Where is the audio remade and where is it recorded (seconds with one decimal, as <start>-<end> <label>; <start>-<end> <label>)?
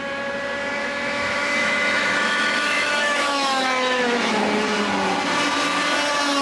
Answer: 0.0-0.8 recorded; 0.8-4.4 remade; 4.4-6.4 recorded